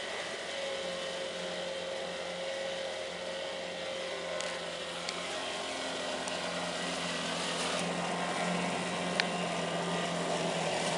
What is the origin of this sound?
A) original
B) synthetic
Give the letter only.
A